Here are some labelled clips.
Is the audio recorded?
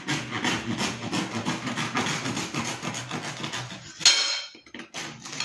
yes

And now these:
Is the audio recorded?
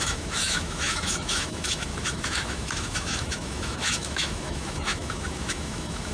no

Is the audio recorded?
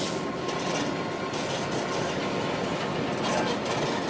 yes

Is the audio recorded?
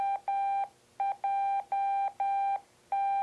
yes